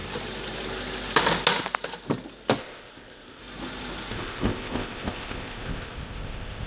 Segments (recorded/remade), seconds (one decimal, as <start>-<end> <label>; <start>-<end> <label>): 0.0-2.6 recorded; 2.6-3.4 remade; 3.4-4.1 recorded; 4.1-6.7 remade